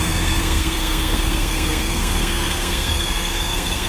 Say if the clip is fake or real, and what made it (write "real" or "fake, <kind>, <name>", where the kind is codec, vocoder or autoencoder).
fake, codec, SNAC